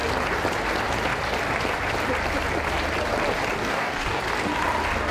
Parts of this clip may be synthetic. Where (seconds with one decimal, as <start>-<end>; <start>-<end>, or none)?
3.6-4.2